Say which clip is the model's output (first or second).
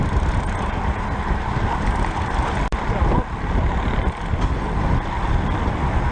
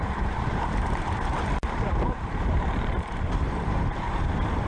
second